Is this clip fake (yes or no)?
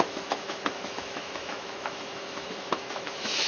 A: yes